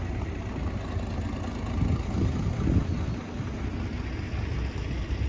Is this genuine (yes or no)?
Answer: yes